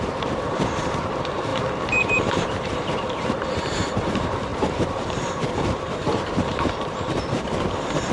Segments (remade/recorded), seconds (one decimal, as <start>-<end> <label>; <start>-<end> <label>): 0.0-6.5 remade; 6.5-8.1 recorded